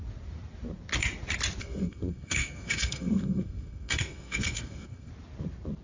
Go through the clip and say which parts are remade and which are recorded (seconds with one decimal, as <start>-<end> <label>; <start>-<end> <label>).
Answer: 0.0-1.6 recorded; 1.6-5.1 remade; 5.1-5.8 recorded